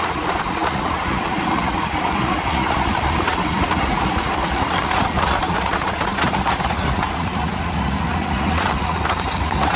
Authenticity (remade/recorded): remade